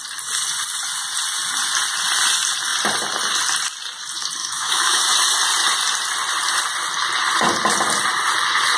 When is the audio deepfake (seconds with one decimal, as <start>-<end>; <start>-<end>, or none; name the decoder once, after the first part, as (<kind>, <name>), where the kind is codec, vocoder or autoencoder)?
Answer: 4.4-5.0 (autoencoder, DAC-VAE)